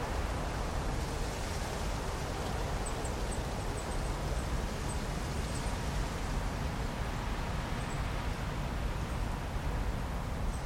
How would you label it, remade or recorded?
recorded